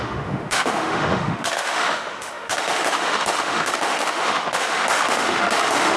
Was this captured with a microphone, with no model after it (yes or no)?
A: no